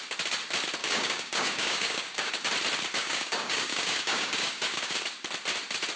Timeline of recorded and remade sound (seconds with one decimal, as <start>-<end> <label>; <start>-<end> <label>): 0.0-0.8 recorded; 0.8-2.3 remade; 2.3-3.0 recorded; 3.0-5.0 remade; 5.0-6.0 recorded